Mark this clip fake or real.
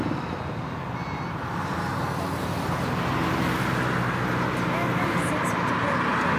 real